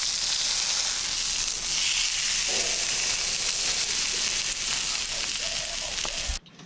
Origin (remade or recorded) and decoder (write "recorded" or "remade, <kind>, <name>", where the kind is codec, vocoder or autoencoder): recorded